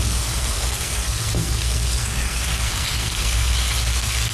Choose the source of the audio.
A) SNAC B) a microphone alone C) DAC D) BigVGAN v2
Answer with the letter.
A